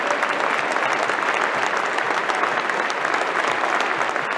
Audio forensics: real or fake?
real